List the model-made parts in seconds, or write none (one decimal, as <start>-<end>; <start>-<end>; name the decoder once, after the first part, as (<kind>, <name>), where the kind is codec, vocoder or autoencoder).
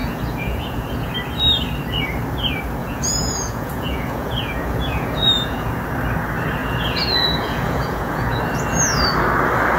0.0-1.1 (vocoder, Vocos); 2.8-5.7; 6.6-8.4